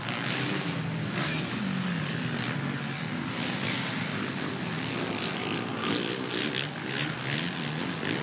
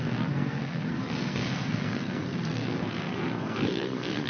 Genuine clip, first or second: first